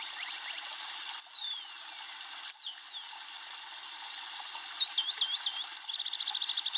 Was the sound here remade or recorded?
recorded